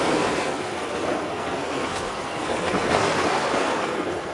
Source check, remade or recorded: remade